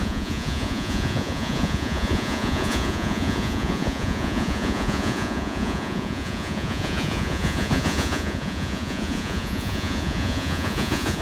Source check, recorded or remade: remade